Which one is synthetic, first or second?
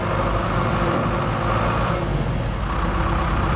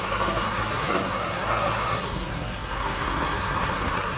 second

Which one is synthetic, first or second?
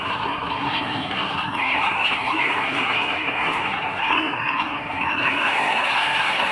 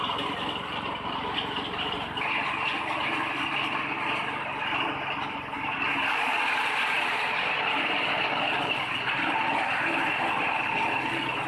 first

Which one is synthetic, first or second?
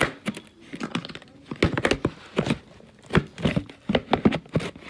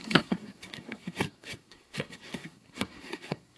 second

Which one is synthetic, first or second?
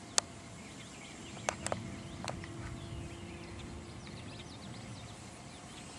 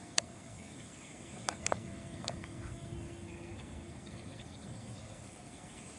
second